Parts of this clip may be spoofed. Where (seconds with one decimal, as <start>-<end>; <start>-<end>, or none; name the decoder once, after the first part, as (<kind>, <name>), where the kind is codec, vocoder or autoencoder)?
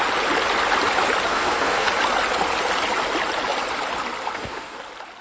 1.3-1.9 (codec, SNAC); 4.3-4.8